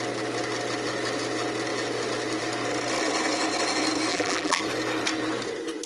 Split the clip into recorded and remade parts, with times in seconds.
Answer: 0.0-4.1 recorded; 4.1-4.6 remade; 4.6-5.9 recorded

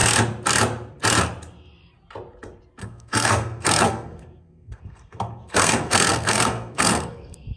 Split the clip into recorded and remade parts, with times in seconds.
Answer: 0.0-2.8 recorded; 2.8-7.6 remade

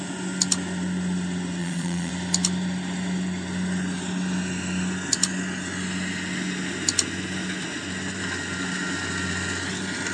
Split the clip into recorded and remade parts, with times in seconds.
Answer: 0.0-1.6 recorded; 1.6-2.1 remade; 2.1-10.1 recorded

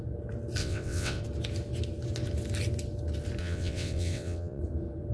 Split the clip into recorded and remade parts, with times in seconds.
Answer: 0.0-0.6 recorded; 0.6-1.2 remade; 1.2-3.4 recorded; 3.4-4.6 remade; 4.6-5.1 recorded

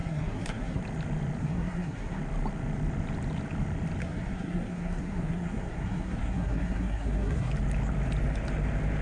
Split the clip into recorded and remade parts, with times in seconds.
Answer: 0.0-0.8 remade; 0.8-1.4 recorded; 1.4-2.2 remade; 2.2-4.0 recorded; 4.0-7.5 remade; 7.5-9.0 recorded